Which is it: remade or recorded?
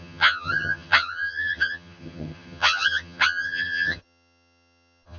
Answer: remade